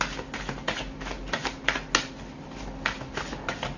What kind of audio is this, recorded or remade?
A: recorded